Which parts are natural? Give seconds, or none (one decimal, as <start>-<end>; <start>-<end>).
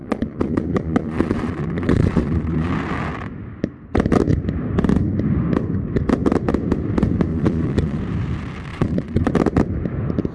2.7-7.3; 8.0-8.7; 9.3-10.3